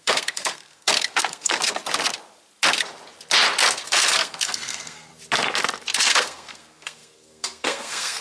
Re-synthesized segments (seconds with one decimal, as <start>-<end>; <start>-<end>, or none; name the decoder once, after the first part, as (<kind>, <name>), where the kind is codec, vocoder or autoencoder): 0.0-1.8 (codec, SNAC); 3.8-5.1; 6.0-8.2